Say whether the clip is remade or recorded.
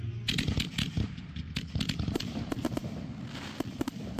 recorded